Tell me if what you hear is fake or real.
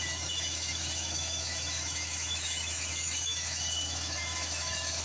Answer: fake